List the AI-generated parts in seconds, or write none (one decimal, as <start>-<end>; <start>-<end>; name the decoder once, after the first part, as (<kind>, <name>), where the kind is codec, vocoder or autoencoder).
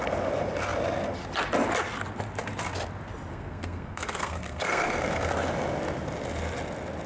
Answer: 3.3-5.3 (codec, SNAC)